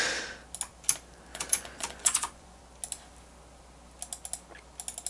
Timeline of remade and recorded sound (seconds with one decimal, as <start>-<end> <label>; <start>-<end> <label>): 0.0-1.3 recorded; 1.3-2.6 remade; 2.6-5.1 recorded